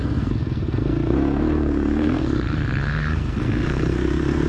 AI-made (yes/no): yes